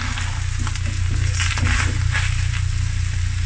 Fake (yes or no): no